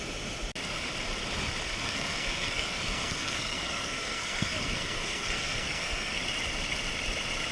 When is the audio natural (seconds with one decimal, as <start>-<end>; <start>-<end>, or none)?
0.0-1.7; 6.2-7.5